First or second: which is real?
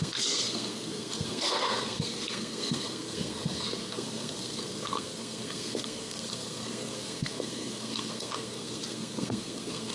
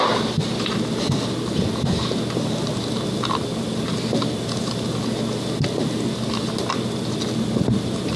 second